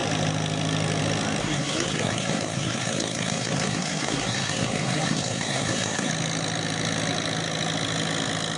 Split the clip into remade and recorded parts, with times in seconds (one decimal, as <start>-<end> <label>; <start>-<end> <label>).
0.0-1.4 recorded; 1.4-6.1 remade; 6.1-8.6 recorded